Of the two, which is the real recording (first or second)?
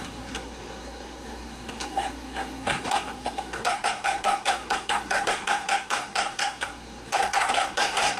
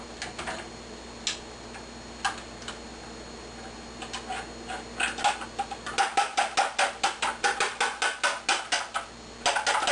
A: second